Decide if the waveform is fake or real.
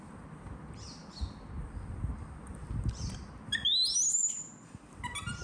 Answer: real